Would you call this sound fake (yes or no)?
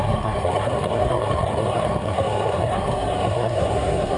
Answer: yes